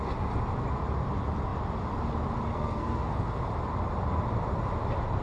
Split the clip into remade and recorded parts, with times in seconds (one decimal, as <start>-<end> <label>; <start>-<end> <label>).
0.0-2.5 recorded; 2.5-3.1 remade; 3.1-5.2 recorded